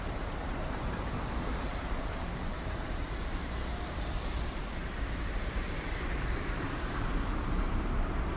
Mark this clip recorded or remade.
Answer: remade